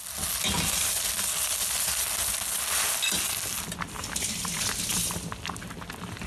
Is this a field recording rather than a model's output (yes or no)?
yes